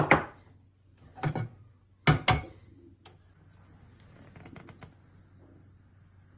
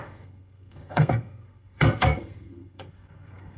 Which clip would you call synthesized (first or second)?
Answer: second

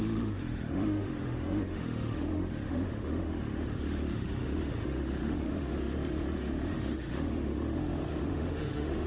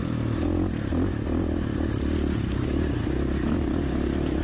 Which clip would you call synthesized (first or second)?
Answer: first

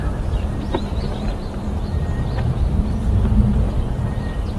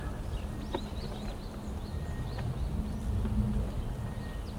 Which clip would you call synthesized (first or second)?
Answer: first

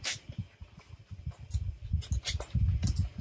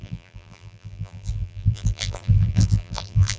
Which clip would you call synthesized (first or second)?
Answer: second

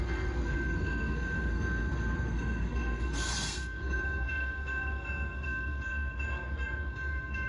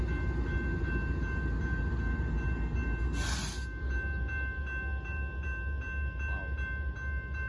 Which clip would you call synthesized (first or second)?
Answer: first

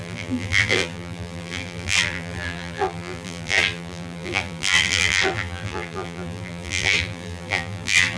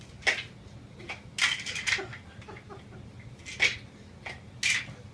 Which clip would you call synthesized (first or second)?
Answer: first